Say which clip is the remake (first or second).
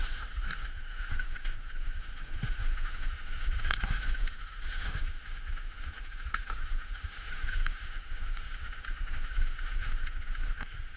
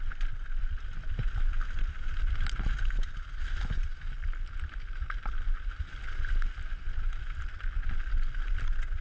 first